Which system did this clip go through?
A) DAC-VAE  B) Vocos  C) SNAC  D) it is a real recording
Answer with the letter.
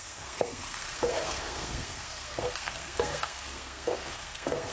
C